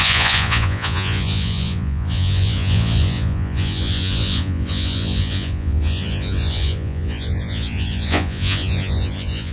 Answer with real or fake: fake